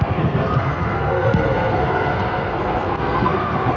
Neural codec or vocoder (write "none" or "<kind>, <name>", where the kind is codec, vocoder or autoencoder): codec, SNAC